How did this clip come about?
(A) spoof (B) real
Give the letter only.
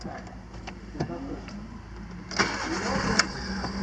B